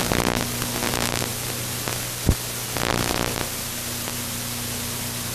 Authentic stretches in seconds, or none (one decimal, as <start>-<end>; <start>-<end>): 0.0-5.3